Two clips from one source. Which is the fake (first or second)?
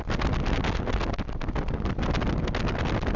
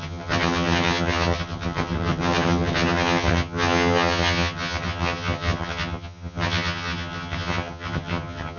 second